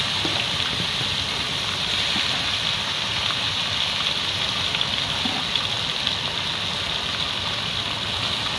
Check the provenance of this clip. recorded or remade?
recorded